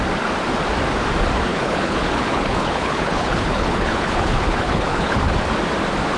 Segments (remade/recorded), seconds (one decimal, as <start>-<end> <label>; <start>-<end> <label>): 0.0-1.5 recorded; 1.5-5.2 remade; 5.2-6.2 recorded